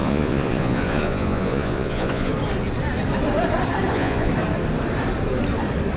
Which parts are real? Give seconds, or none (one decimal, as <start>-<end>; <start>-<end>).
2.3-3.9; 4.3-6.0